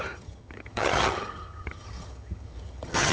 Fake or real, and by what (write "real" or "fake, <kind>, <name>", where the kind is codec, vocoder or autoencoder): fake, vocoder, HiFi-GAN